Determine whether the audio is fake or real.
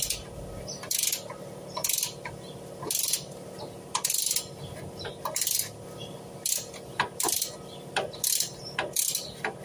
real